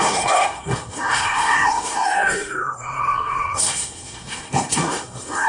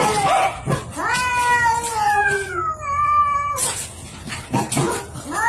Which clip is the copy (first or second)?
first